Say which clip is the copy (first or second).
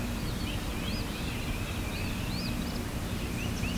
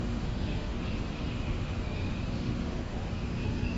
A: second